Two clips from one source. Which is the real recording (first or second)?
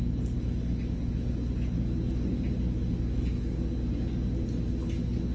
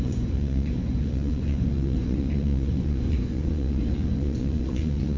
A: first